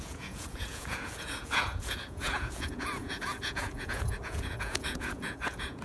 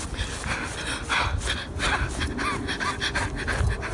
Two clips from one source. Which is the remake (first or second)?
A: first